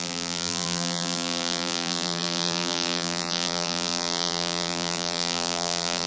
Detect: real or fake fake